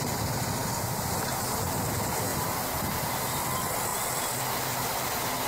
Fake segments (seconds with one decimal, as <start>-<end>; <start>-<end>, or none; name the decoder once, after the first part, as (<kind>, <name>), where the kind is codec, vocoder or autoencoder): 0.6-1.4 (vocoder, BigVGAN v2); 2.3-3.4